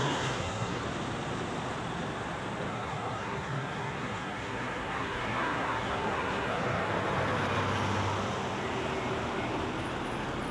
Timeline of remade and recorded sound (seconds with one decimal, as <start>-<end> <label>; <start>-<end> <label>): 0.0-0.8 remade; 0.8-2.7 recorded; 2.7-6.9 remade; 6.9-10.5 recorded